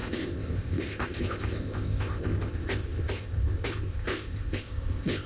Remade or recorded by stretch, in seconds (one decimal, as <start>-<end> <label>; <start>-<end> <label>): 0.0-5.3 remade